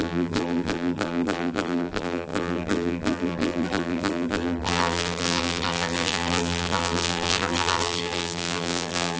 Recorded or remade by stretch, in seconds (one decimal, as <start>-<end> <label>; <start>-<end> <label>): 0.0-9.2 remade